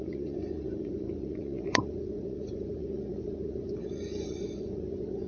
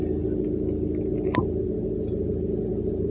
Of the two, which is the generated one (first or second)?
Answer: first